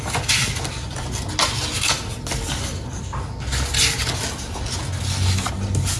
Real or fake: real